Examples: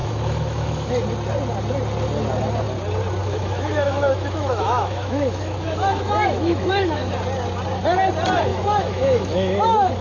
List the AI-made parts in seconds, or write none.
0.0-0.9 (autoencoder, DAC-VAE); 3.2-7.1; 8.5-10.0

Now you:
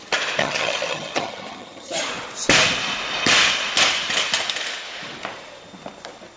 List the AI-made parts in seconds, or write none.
0.4-2.0 (vocoder, HiFi-GAN)